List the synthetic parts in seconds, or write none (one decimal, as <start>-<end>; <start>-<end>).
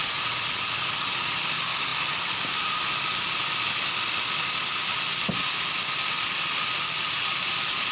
none